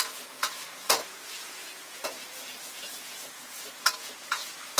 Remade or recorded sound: remade